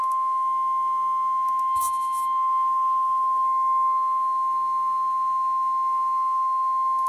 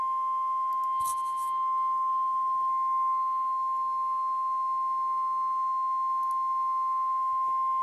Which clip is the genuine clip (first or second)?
second